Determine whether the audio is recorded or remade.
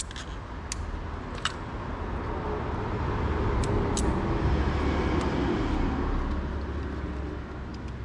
recorded